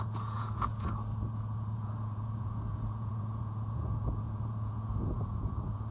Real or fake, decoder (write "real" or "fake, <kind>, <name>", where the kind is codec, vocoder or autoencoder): fake, vocoder, Vocos